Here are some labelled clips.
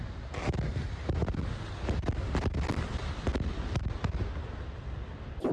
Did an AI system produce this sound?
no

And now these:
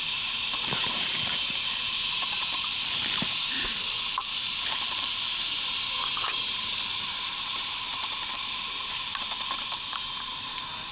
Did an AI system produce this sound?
yes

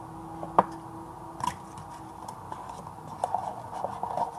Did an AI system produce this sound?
no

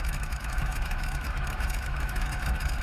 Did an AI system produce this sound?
yes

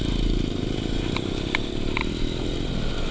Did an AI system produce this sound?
no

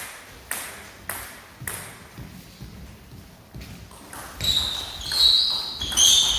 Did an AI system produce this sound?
no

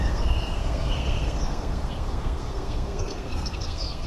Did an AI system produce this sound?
yes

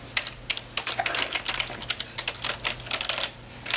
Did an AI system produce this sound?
no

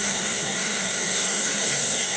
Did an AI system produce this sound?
yes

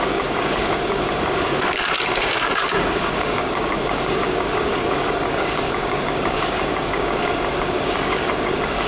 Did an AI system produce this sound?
yes